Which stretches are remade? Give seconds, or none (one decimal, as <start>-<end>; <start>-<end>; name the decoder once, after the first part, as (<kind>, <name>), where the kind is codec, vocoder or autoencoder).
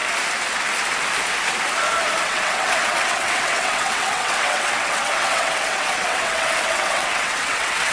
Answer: 2.2-7.9 (vocoder, WaveNeXt)